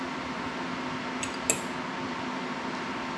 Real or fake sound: real